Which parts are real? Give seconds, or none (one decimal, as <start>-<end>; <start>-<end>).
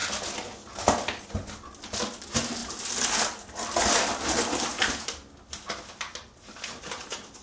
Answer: 0.0-7.4